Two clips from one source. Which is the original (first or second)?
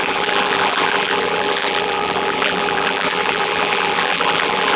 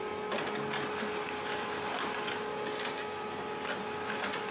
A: second